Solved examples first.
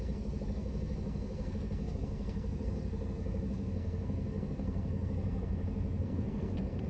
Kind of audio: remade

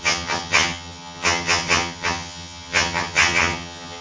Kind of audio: remade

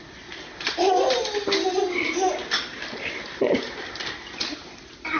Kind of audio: recorded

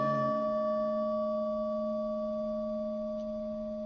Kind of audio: recorded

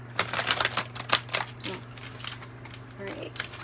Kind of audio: recorded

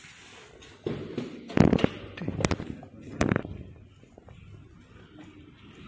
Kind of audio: recorded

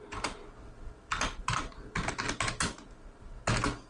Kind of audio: recorded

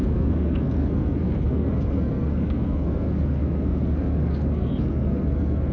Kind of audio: remade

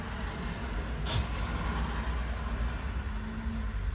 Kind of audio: recorded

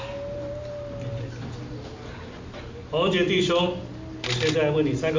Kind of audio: recorded